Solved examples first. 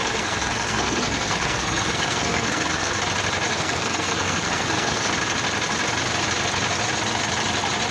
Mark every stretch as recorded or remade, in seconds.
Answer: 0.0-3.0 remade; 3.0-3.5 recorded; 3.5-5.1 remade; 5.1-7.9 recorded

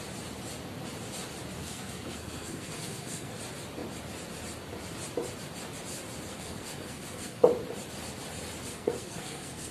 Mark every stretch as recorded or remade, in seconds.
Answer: 0.0-1.6 recorded; 1.6-3.4 remade; 3.4-6.3 recorded; 6.3-7.5 remade; 7.5-8.7 recorded; 8.7-9.7 remade

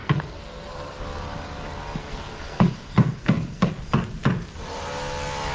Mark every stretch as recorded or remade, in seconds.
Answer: 0.0-1.0 remade; 1.0-2.0 recorded; 2.0-3.7 remade; 3.7-5.5 recorded

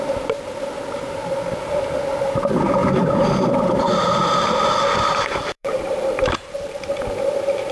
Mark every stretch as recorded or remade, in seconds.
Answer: 0.0-2.8 recorded; 2.8-7.1 remade; 7.1-7.7 recorded